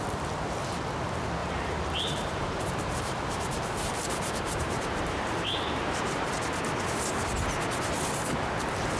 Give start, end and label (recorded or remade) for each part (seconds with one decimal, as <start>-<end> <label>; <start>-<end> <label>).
0.0-1.4 recorded; 1.4-6.3 remade; 6.3-9.0 recorded